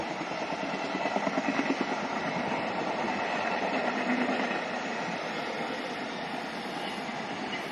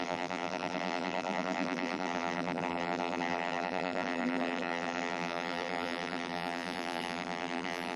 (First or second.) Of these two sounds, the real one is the first